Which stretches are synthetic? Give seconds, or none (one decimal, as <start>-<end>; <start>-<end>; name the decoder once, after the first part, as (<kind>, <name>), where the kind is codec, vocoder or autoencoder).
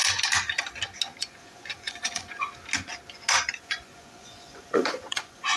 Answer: 1.2-2.5 (vocoder, Vocos); 3.6-5.6